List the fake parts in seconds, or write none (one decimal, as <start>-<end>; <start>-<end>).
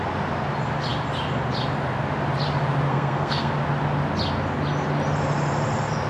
2.9-3.5